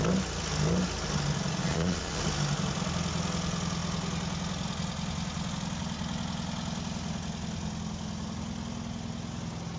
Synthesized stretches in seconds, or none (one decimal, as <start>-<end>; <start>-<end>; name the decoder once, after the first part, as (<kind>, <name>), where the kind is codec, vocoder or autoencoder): 1.6-2.2 (vocoder, Vocos)